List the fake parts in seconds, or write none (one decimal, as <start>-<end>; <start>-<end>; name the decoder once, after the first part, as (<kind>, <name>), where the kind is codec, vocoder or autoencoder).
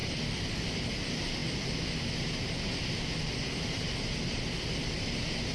none